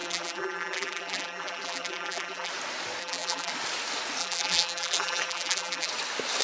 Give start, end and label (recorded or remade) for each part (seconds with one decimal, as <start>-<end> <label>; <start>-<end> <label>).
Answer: 0.0-2.5 remade; 2.5-3.0 recorded; 3.0-3.5 remade; 3.5-4.2 recorded; 4.2-5.9 remade; 5.9-6.4 recorded